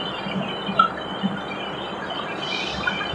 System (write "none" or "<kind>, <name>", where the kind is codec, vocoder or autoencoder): none